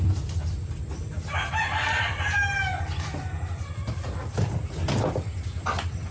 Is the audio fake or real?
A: real